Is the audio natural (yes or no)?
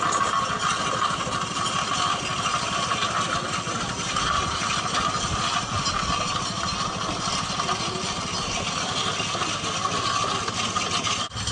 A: yes